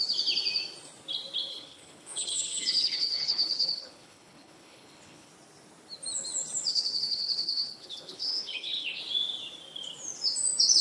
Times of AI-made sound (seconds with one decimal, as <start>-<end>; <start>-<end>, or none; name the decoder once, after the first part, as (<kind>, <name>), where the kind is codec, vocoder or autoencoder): 1.5-5.3 (codec, HILCodec); 6.7-9.0